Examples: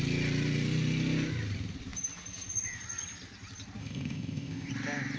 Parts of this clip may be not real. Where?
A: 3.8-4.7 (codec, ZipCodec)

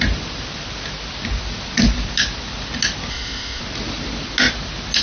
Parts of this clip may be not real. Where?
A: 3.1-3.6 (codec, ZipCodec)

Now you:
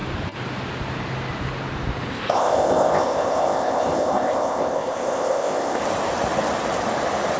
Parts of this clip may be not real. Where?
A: 2.1-5.8 (codec, ZipCodec)